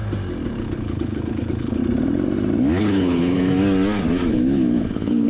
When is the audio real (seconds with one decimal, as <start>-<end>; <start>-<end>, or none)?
0.0-0.6; 1.8-2.8; 3.4-4.3